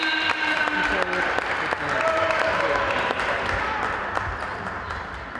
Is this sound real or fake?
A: real